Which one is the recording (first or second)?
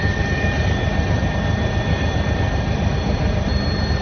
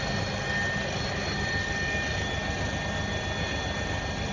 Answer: second